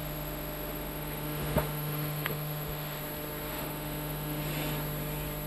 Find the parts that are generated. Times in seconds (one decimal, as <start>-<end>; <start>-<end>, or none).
0.0-3.0; 3.5-4.4